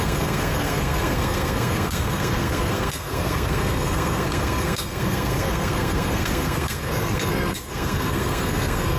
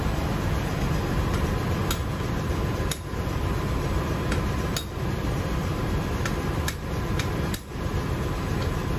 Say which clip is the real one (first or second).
second